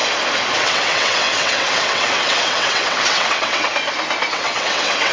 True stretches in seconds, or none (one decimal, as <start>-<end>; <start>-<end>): 0.0-0.6; 3.7-4.3